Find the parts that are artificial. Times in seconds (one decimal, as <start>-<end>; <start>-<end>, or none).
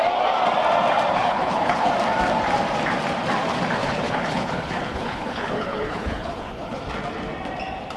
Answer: 1.1-1.9; 3.8-6.8